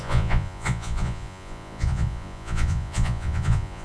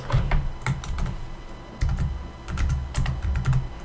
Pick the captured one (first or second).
second